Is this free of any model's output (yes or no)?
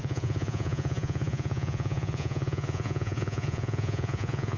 no